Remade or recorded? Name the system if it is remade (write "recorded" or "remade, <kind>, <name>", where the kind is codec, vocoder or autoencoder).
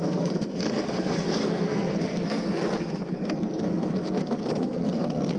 remade, codec, SNAC